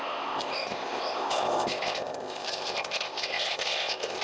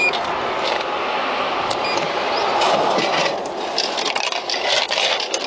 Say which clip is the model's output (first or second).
first